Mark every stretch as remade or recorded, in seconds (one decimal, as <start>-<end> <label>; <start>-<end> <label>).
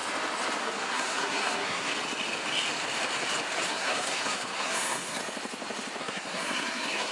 0.0-0.6 recorded; 0.6-1.9 remade; 1.9-3.7 recorded; 3.7-5.2 remade; 5.2-6.0 recorded; 6.0-7.1 remade